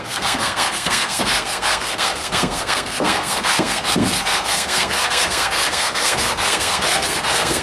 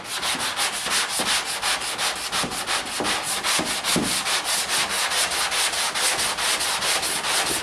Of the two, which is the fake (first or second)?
first